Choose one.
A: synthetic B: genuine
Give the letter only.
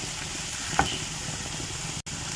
B